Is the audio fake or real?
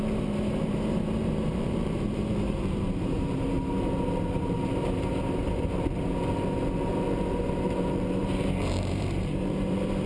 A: fake